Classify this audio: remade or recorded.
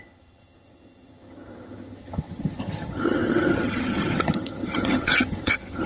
remade